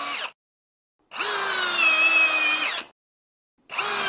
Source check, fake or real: real